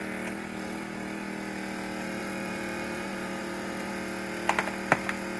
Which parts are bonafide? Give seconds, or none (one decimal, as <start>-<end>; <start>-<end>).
0.0-2.2; 3.9-5.4